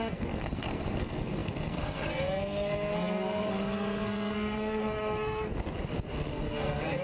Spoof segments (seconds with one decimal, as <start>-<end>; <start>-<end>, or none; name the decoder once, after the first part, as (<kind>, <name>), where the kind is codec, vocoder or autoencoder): 0.0-5.5 (codec, SNAC); 6.3-7.0